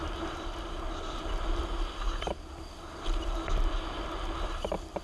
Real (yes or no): yes